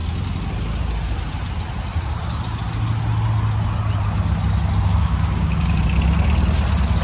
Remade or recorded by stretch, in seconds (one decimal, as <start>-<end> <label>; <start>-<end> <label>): 0.0-4.9 recorded; 4.9-5.8 remade; 5.8-7.0 recorded